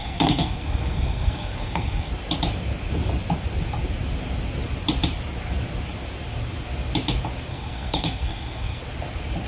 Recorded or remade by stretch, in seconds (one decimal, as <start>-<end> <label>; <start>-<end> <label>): 0.0-2.1 remade; 2.1-7.5 recorded; 7.5-8.8 remade; 8.8-9.5 recorded